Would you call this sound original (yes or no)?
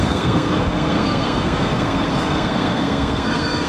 no